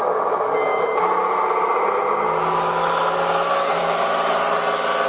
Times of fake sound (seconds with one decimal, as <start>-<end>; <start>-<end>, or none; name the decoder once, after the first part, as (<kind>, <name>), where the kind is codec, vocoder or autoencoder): 0.7-3.8 (autoencoder, DAC-VAE)